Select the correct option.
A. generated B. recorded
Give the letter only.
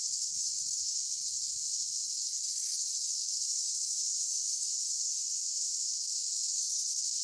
A